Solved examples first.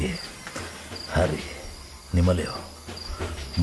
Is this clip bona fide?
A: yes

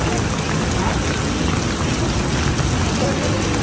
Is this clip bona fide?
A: yes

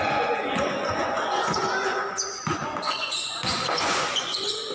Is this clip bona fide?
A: no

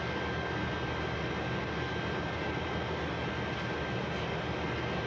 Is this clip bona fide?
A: yes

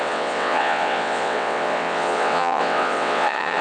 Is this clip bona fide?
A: no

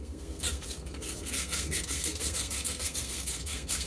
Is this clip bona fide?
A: no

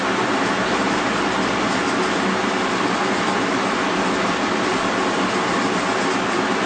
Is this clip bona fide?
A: yes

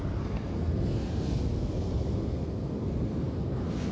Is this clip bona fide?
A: no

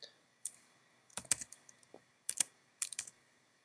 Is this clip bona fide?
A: no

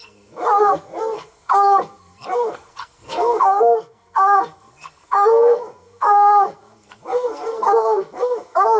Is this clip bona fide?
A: no